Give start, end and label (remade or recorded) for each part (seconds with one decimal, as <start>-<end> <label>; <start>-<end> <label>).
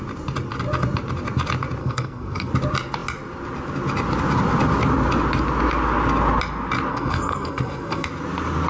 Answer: 0.0-1.8 recorded; 1.8-2.5 remade; 2.5-6.9 recorded; 6.9-8.1 remade; 8.1-8.7 recorded